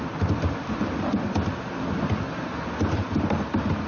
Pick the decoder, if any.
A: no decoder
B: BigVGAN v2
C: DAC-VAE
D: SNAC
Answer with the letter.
A